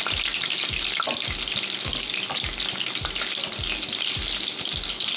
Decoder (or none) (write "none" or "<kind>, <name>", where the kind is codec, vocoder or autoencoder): none